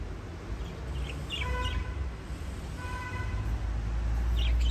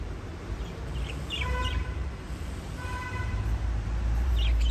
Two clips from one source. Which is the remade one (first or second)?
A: second